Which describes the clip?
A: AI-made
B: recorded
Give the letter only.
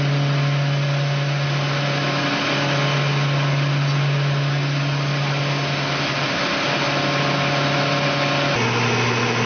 B